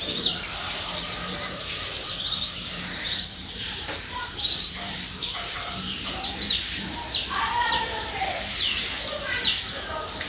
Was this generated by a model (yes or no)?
yes